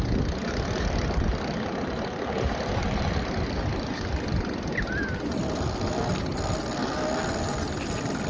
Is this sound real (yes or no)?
yes